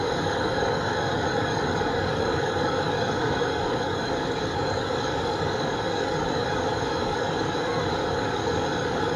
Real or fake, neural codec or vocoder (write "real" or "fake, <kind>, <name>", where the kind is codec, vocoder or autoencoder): fake, codec, DAC